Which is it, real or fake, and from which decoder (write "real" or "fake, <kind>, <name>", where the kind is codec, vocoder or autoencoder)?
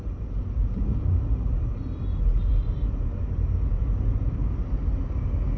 real